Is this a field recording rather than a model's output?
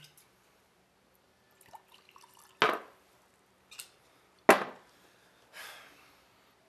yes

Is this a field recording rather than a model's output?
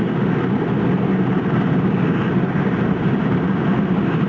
yes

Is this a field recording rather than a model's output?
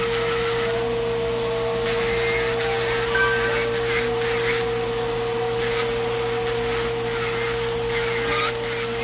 yes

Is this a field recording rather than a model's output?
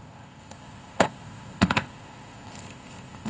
no